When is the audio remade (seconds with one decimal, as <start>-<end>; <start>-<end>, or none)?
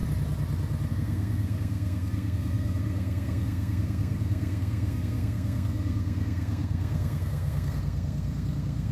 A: 0.9-8.9